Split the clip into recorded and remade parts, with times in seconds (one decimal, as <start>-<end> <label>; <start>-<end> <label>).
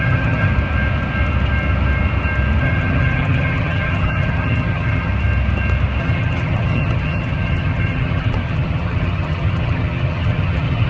0.0-0.5 remade; 0.5-2.6 recorded; 2.6-5.1 remade; 5.1-6.0 recorded; 6.0-10.9 remade